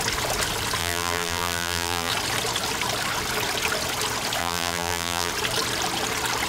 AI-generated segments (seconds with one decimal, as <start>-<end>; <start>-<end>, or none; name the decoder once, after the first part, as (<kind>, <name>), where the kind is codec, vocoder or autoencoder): 0.8-2.1 (vocoder, BigVGAN v2); 4.4-5.3